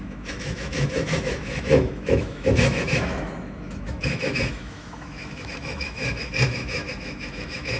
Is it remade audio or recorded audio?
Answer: remade